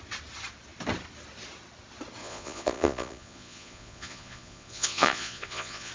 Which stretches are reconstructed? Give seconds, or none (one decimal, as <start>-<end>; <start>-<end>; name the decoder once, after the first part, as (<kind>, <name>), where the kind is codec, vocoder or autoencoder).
2.2-5.9 (vocoder, Vocos)